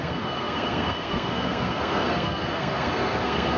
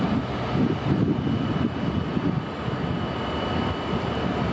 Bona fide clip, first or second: second